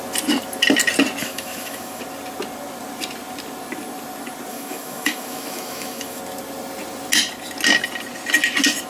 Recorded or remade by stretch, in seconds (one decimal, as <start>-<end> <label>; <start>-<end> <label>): 0.0-1.2 recorded; 1.2-2.0 remade; 2.0-4.5 recorded; 4.5-6.2 remade; 6.2-8.9 recorded